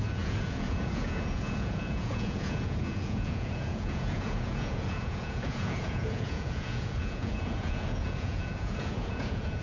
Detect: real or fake fake